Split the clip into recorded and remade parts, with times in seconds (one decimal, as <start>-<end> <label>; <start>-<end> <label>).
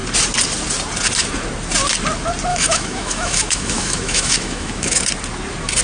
0.0-2.5 recorded; 2.5-5.0 remade; 5.0-5.8 recorded